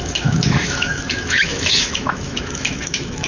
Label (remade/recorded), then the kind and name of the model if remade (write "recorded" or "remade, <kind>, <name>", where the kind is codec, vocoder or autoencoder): remade, autoencoder, DAC-VAE